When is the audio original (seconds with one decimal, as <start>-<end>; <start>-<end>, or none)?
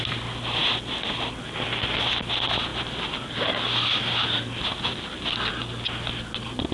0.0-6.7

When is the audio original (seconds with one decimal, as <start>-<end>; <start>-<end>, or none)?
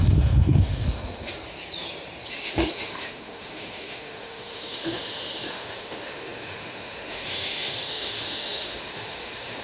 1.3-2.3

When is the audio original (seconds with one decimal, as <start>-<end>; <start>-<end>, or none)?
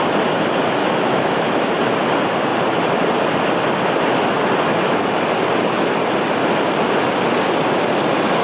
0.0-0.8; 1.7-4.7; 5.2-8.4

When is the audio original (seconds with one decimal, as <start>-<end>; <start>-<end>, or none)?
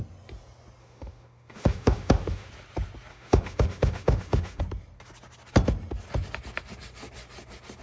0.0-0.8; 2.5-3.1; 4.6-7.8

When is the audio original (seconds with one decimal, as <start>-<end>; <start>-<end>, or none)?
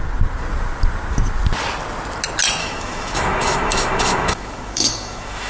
0.0-2.6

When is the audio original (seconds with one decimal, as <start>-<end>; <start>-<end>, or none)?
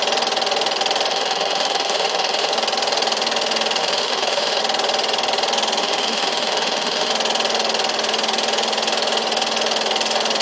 0.0-1.1; 2.5-3.8; 4.6-5.8; 7.1-10.4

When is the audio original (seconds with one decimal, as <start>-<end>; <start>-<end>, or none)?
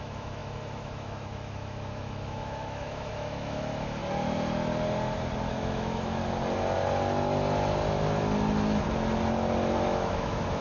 4.0-5.5; 6.2-9.7